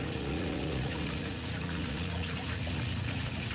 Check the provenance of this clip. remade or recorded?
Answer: remade